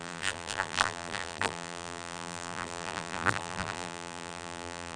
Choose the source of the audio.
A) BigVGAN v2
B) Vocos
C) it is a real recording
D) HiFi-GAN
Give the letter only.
A